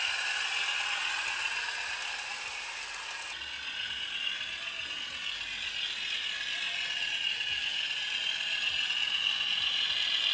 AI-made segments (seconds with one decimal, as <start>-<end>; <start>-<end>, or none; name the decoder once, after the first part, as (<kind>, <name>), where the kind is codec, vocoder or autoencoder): none